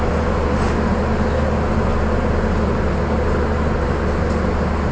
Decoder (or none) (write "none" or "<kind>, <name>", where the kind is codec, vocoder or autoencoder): none